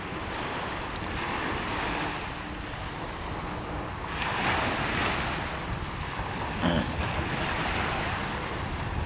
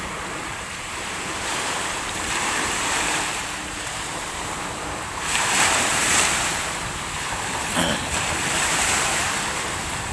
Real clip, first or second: first